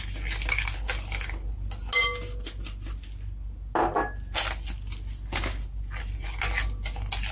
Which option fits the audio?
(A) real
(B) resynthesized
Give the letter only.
A